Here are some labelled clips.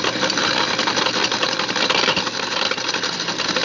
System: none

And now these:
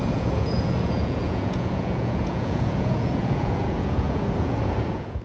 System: vocoder, Vocos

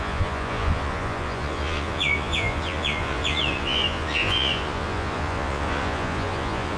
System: vocoder, Vocos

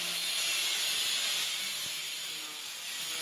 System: none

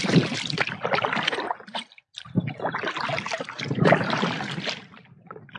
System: none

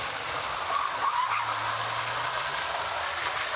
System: none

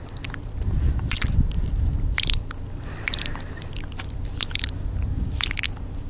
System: vocoder, BigVGAN v2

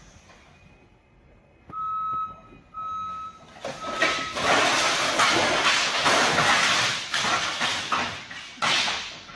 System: none